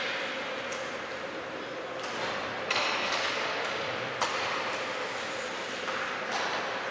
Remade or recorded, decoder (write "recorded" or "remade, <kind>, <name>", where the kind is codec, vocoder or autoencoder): recorded